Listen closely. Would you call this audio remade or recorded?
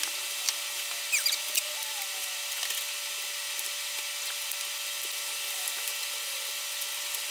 recorded